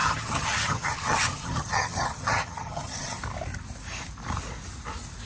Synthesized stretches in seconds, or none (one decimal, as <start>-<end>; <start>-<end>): 0.0-3.2